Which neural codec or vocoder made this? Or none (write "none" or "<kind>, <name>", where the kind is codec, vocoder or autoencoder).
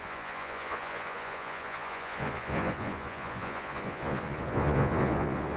vocoder, Vocos